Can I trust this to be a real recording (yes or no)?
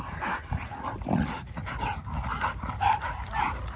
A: yes